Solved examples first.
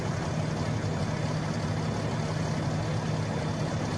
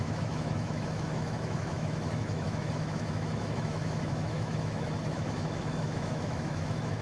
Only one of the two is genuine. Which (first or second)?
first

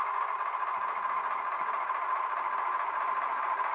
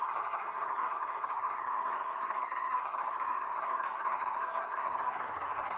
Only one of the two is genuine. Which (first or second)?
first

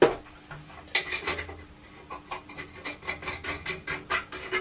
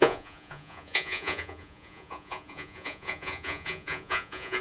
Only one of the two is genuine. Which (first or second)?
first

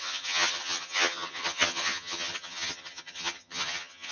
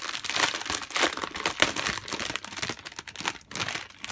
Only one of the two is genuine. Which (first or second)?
second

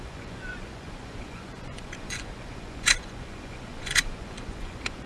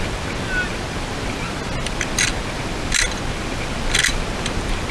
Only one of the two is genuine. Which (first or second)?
second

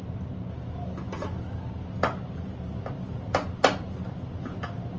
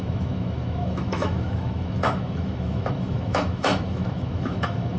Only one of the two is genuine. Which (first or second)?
first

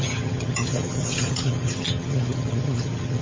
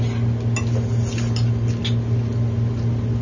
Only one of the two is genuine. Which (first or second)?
second